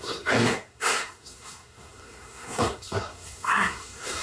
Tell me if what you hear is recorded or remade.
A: remade